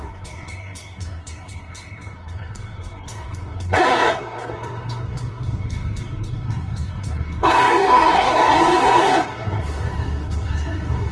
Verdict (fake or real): fake